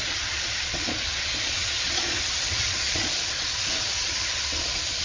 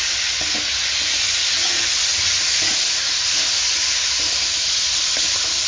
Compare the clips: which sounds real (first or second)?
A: second